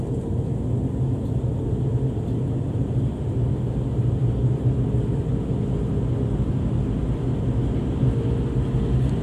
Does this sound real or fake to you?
real